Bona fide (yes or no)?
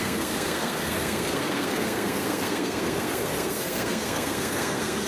no